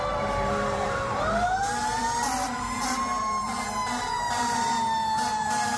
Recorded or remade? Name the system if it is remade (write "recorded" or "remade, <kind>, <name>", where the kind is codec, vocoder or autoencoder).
remade, vocoder, BigVGAN v2